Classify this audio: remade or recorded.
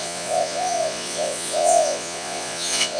remade